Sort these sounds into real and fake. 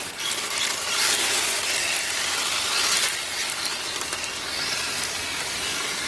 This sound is real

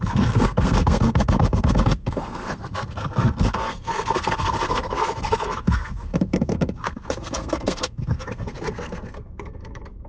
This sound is fake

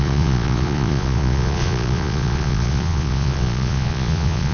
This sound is fake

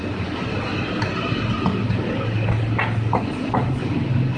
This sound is real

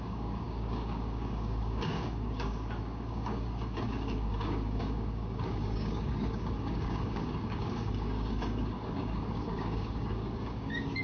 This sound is fake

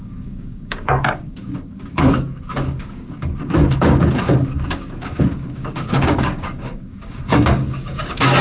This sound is fake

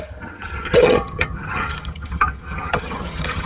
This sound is fake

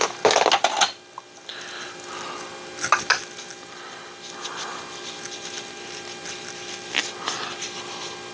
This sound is real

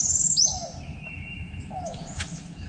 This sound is fake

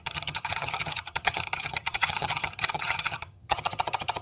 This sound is fake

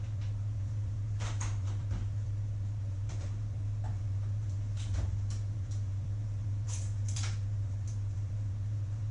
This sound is fake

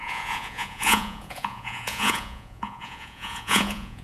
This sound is fake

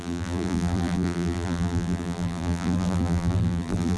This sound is fake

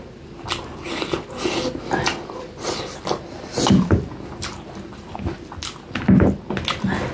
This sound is real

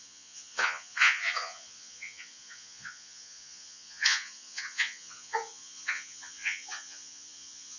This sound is fake